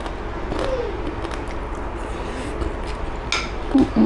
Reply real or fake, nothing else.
real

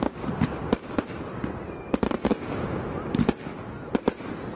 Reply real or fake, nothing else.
real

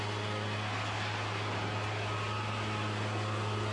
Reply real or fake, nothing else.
real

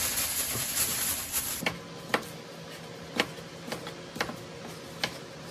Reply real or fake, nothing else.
real